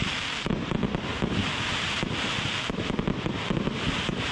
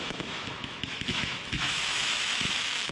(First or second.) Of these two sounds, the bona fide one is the first